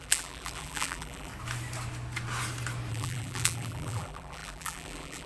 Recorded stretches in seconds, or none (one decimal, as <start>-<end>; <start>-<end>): 1.3-2.9